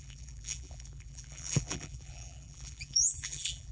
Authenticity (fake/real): fake